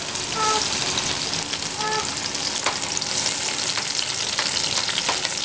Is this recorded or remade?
recorded